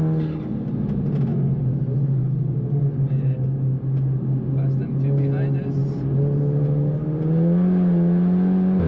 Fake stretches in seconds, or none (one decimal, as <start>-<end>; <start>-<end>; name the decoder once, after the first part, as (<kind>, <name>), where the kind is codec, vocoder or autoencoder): none

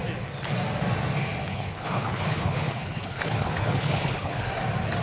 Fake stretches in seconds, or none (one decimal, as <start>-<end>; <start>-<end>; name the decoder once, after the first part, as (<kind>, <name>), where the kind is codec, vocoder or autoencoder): 1.5-4.5 (codec, HILCodec)

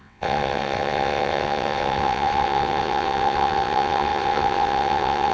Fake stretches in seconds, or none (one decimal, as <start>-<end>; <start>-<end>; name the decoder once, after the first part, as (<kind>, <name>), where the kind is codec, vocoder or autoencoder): 0.0-5.3 (vocoder, WaveNeXt)

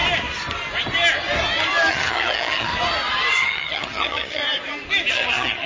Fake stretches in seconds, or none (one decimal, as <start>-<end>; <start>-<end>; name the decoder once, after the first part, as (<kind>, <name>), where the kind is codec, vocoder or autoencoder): 1.9-2.7 (vocoder, HiFi-GAN); 3.3-4.4; 5.1-5.7

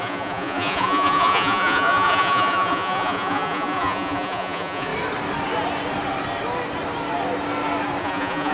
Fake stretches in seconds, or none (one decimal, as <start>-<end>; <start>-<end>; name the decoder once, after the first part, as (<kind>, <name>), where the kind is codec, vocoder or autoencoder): 0.0-4.9 (vocoder, Vocos); 8.0-8.5

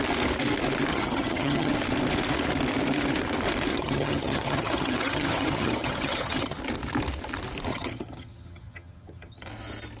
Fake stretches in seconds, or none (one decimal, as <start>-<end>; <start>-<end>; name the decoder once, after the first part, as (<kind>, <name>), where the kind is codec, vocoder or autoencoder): 0.9-1.7 (vocoder, HiFi-GAN); 3.7-6.6; 7.7-9.5

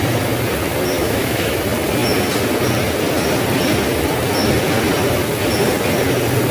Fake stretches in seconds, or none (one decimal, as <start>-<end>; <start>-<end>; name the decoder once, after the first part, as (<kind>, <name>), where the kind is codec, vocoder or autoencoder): 1.0-1.6 (autoencoder, DAC-VAE)

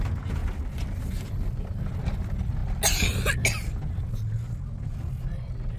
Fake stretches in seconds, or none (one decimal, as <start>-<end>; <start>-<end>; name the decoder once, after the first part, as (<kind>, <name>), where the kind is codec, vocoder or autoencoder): 0.4-1.0 (vocoder, BigVGAN v2)